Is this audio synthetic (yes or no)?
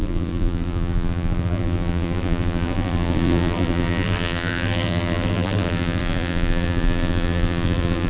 yes